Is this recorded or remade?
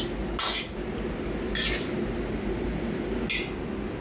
recorded